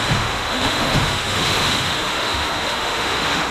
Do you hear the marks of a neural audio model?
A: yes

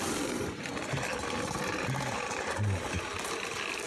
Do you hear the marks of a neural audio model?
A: no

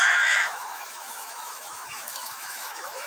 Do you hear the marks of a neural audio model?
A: yes